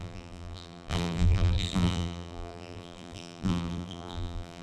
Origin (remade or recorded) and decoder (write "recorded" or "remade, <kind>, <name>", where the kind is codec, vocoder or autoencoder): remade, vocoder, BigVGAN v2